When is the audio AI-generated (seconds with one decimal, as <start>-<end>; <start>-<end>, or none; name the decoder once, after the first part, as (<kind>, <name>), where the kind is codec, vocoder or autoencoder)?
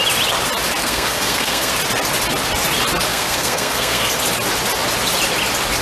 0.8-1.7 (codec, SNAC); 3.1-4.1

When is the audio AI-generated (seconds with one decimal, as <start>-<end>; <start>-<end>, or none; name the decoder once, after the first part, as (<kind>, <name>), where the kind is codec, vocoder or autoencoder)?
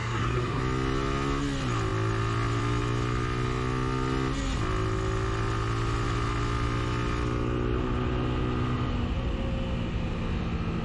0.0-0.6 (codec, SNAC)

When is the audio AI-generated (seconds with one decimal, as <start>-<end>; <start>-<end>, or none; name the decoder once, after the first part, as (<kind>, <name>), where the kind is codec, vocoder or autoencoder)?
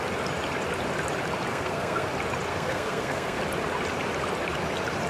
1.5-2.1 (codec, SNAC); 2.5-3.4